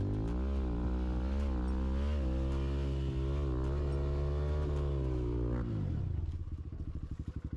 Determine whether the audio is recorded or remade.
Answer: recorded